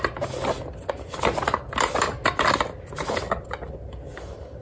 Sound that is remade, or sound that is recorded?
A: recorded